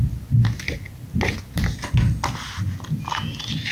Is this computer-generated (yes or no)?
no